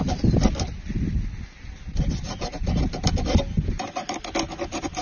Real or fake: real